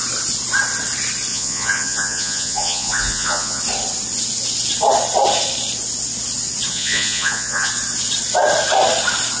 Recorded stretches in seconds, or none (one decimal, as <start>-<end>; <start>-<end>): 0.0-1.3; 3.6-6.7; 7.7-9.4